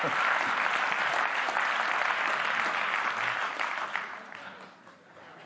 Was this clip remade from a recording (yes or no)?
no